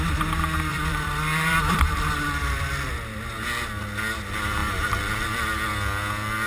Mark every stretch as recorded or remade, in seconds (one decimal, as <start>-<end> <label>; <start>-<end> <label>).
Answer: 0.0-0.7 recorded; 0.7-2.7 remade; 2.7-4.6 recorded; 4.6-5.7 remade; 5.7-6.5 recorded

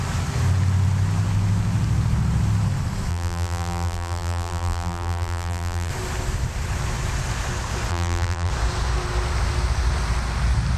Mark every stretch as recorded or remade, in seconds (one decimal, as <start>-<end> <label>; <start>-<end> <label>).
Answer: 0.0-3.1 recorded; 3.1-5.9 remade; 5.9-7.9 recorded; 7.9-8.5 remade; 8.5-10.8 recorded

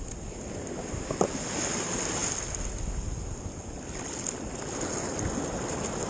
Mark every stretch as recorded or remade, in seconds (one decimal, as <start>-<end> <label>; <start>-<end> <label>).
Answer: 0.0-6.1 recorded

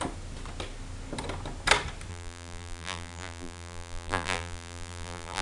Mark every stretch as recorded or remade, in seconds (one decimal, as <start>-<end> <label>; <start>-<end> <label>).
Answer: 0.0-2.1 recorded; 2.1-5.4 remade

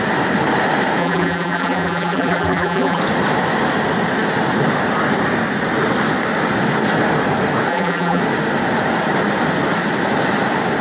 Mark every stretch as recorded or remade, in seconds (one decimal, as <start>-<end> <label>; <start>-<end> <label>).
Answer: 0.0-1.0 recorded; 1.0-3.0 remade; 3.0-7.7 recorded; 7.7-8.2 remade; 8.2-10.8 recorded

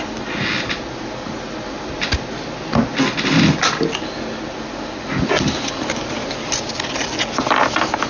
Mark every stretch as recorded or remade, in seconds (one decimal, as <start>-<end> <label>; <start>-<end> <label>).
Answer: 0.0-8.1 recorded

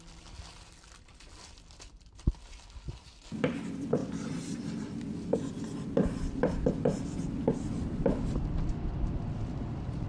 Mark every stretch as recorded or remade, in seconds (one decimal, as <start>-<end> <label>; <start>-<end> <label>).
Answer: 0.0-10.1 remade